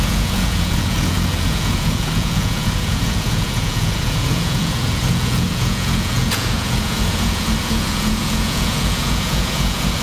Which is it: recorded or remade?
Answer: remade